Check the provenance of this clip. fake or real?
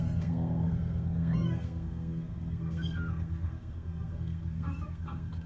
fake